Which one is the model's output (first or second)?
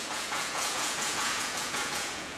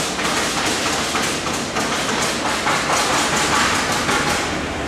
first